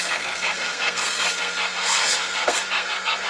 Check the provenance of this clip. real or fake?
fake